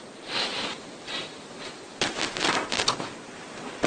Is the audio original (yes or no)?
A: yes